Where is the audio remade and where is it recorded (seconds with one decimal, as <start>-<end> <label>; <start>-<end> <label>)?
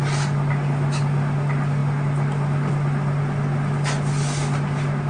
0.0-5.1 recorded